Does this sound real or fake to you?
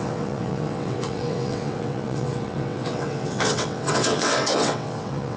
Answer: fake